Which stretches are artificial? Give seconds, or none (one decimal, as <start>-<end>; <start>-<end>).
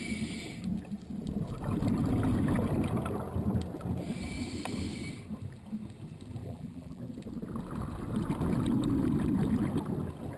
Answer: 6.4-7.0